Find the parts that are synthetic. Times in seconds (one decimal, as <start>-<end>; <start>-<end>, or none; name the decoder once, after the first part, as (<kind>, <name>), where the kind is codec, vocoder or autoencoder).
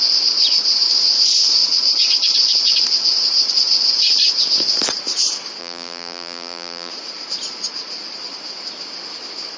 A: 5.6-6.9 (vocoder, BigVGAN v2)